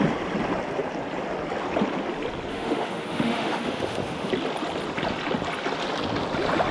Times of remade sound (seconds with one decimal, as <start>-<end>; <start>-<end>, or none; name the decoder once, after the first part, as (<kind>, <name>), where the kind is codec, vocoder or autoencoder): 2.5-4.3 (autoencoder, DAC-VAE)